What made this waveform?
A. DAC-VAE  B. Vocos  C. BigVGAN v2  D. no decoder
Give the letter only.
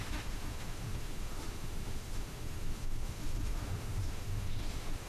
A